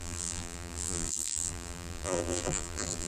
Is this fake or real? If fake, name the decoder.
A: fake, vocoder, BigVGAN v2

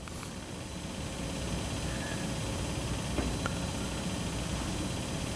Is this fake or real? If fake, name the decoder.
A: fake, vocoder, BigVGAN v2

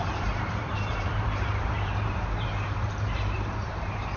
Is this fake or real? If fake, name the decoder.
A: fake, vocoder, BigVGAN v2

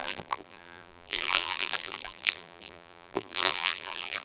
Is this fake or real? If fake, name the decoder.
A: fake, vocoder, BigVGAN v2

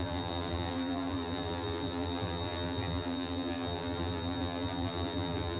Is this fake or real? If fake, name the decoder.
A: fake, vocoder, BigVGAN v2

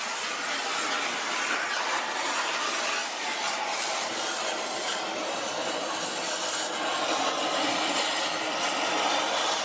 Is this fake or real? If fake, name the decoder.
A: fake, vocoder, BigVGAN v2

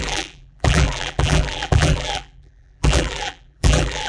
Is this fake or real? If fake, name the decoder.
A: fake, vocoder, BigVGAN v2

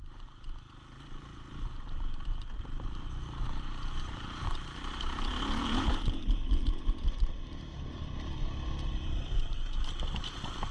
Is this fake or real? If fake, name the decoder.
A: fake, vocoder, BigVGAN v2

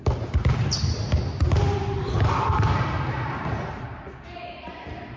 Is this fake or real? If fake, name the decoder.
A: real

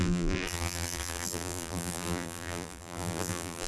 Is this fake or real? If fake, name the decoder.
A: fake, vocoder, BigVGAN v2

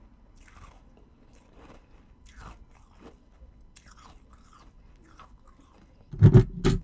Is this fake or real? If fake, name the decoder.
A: real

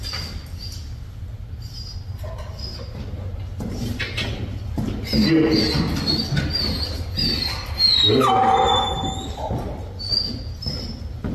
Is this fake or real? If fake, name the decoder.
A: real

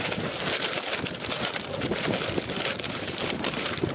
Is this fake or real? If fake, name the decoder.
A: fake, vocoder, BigVGAN v2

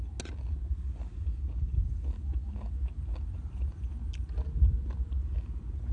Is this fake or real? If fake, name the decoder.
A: real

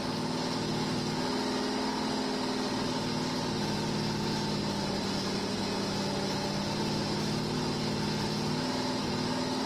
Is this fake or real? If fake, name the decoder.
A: real